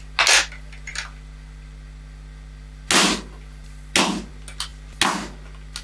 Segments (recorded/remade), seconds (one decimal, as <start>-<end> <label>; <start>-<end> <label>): 0.0-5.8 recorded